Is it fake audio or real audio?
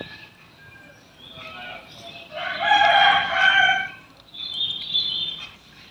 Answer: fake